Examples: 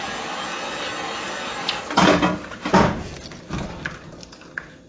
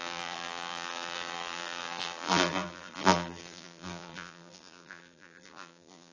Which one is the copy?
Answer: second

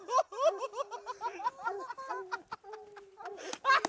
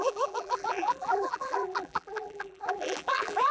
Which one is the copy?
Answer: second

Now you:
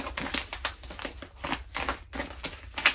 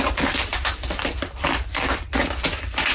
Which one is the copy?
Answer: second